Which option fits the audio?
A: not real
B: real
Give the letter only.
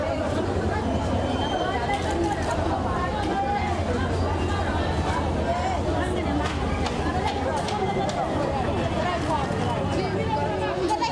B